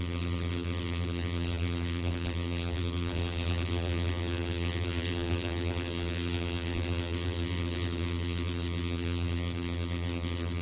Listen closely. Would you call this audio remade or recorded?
remade